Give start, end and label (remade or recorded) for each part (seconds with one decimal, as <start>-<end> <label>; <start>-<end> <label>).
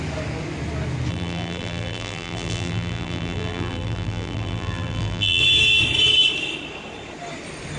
0.0-1.1 recorded; 1.1-5.4 remade; 5.4-7.8 recorded